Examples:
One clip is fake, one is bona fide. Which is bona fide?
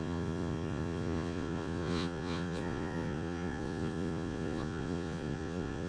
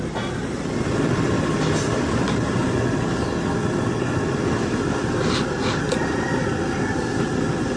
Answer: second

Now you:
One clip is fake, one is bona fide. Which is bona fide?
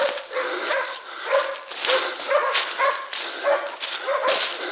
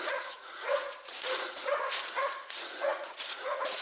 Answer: first